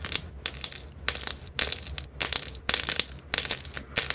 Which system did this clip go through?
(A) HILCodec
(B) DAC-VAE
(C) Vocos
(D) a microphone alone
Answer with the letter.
D